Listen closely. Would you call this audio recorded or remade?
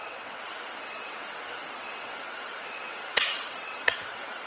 remade